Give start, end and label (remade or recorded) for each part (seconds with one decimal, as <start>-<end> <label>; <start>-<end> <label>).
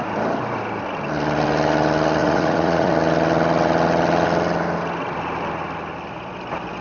0.0-2.2 recorded; 2.2-2.9 remade; 2.9-6.8 recorded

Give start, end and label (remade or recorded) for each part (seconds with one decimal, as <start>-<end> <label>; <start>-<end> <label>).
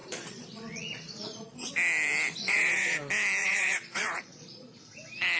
0.0-1.7 remade; 1.7-2.4 recorded; 2.4-3.0 remade; 3.0-3.4 recorded; 3.4-4.8 remade; 4.8-5.4 recorded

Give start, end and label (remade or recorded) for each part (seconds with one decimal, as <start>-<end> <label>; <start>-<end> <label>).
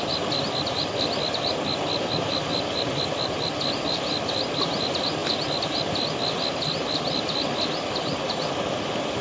0.0-9.2 recorded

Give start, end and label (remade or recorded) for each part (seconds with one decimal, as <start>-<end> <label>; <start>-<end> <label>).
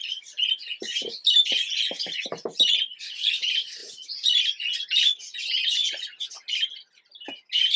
0.0-3.8 recorded; 3.8-4.4 remade; 4.4-7.8 recorded